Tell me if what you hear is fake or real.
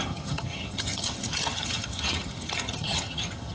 fake